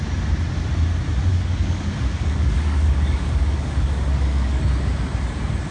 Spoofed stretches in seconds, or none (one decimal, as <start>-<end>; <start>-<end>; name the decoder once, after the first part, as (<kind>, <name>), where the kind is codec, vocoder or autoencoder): 1.3-4.6 (codec, DAC)